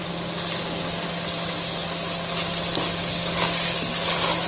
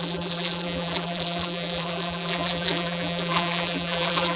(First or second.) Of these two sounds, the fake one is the second